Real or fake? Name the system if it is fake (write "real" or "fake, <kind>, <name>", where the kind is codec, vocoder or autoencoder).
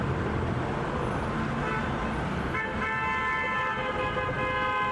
real